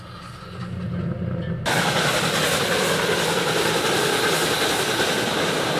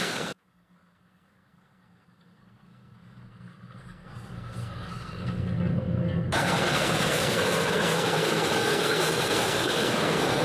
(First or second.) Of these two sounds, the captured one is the first